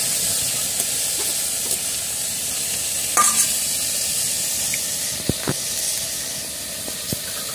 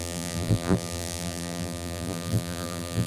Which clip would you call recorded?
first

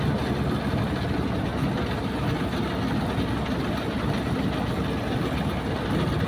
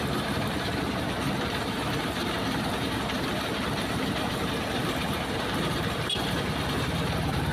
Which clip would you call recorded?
first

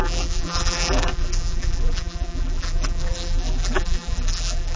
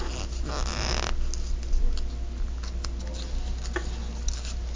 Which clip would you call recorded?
second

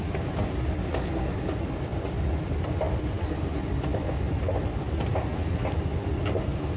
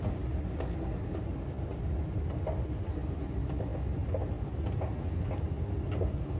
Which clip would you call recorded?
second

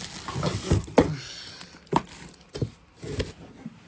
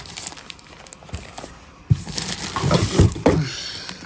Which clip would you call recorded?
first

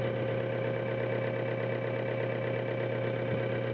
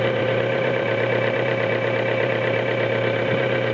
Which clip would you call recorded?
first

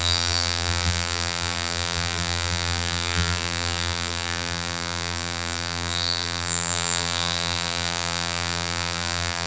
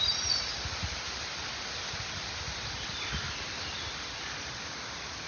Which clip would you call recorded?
second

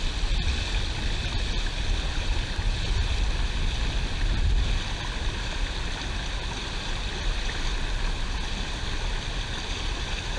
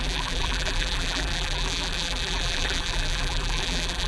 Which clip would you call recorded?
first